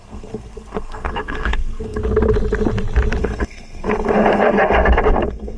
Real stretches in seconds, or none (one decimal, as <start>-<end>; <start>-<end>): 2.0-3.2